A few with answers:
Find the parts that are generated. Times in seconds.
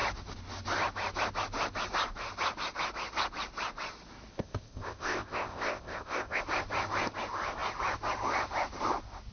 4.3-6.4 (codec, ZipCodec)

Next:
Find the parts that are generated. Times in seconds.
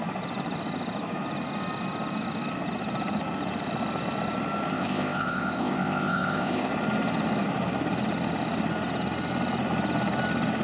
4.7-6.7 (codec, ZipCodec)